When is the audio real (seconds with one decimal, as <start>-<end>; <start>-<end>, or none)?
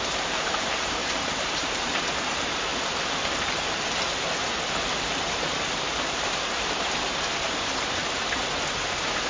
2.7-5.3